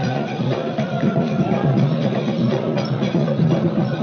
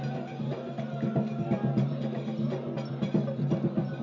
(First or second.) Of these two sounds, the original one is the second